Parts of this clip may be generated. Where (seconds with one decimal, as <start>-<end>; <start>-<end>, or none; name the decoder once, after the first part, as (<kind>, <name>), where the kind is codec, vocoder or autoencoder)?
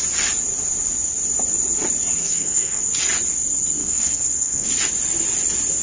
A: 2.2-2.8 (codec, SNAC); 3.8-4.7